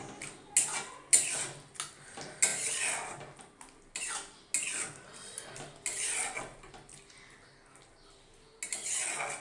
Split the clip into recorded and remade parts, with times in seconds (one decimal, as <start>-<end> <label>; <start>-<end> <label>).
0.0-9.4 recorded